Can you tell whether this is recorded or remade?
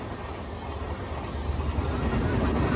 recorded